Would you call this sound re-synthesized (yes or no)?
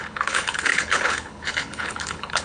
yes